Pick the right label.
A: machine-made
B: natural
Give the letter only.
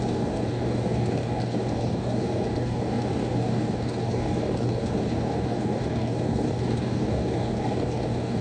A